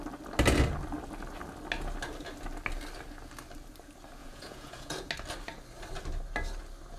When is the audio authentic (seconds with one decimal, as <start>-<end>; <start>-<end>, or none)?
0.0-4.2; 5.1-7.0